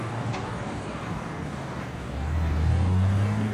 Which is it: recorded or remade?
remade